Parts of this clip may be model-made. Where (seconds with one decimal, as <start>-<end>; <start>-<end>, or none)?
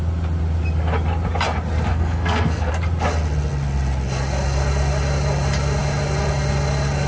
1.9-2.7